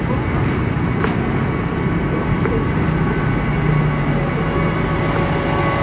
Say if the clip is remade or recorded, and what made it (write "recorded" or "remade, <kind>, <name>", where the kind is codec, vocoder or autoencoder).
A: recorded